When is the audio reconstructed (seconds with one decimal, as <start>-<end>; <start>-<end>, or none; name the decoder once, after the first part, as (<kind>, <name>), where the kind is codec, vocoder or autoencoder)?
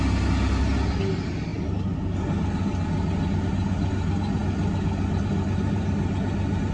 none